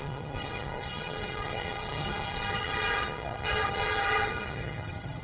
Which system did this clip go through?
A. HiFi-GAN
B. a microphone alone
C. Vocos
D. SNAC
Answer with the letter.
A